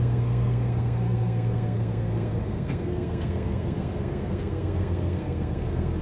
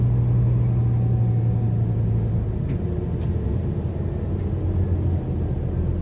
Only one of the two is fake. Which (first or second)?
first